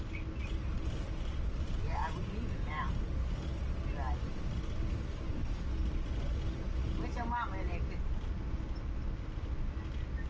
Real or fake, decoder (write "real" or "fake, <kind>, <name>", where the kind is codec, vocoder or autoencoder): real